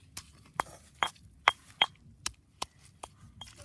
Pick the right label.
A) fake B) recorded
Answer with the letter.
B